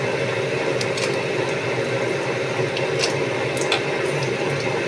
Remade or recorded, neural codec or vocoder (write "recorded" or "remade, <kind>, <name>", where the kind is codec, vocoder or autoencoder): recorded